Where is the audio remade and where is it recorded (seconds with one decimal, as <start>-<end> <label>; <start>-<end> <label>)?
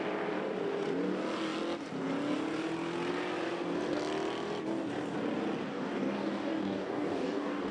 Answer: 0.0-5.7 recorded; 5.7-7.7 remade